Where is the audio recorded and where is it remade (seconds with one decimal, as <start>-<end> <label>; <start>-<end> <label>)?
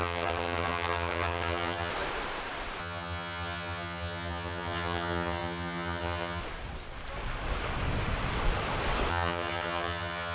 0.0-1.9 remade; 1.9-2.8 recorded; 2.8-6.4 remade; 6.4-9.1 recorded; 9.1-10.3 remade